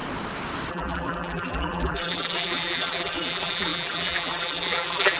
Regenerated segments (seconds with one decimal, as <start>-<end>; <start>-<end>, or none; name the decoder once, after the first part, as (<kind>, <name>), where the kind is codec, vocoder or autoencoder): 0.7-5.2 (vocoder, BigVGAN v2)